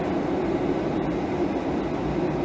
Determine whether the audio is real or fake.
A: real